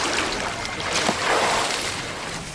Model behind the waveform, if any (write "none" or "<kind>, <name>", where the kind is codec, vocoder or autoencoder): vocoder, BigVGAN v2